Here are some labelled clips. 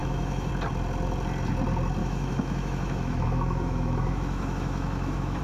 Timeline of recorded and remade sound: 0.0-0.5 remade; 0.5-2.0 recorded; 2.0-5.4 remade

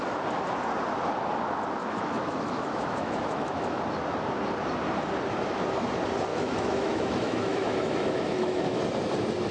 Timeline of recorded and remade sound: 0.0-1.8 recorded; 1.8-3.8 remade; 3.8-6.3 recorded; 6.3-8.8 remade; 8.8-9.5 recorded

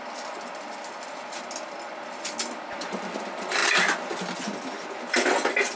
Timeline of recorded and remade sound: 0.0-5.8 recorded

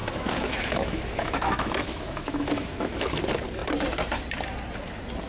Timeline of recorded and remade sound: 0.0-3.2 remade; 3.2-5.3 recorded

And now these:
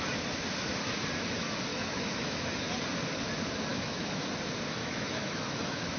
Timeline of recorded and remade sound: 0.0-1.7 recorded; 1.7-2.4 remade; 2.4-3.7 recorded; 3.7-4.3 remade; 4.3-4.8 recorded; 4.8-6.0 remade

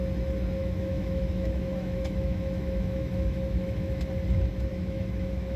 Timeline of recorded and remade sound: 0.0-0.6 recorded; 0.6-4.0 remade; 4.0-4.7 recorded; 4.7-5.6 remade